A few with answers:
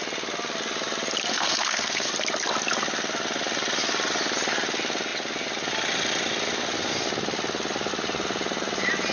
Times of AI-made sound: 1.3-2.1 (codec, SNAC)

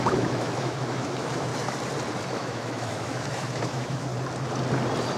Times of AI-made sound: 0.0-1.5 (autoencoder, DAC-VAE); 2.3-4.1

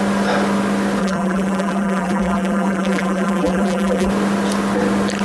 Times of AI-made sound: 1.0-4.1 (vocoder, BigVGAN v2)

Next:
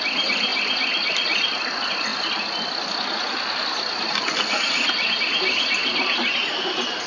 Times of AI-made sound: none

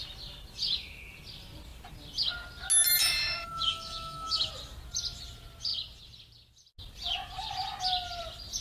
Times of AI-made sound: 3.0-4.5 (autoencoder, DAC-VAE)

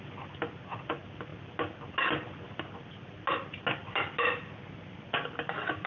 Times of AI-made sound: none

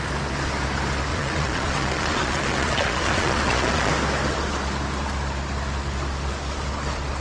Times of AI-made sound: 1.1-3.9 (vocoder, Vocos)

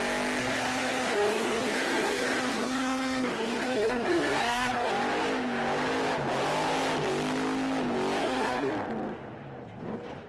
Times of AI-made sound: 0.4-4.9 (codec, SNAC); 8.2-8.7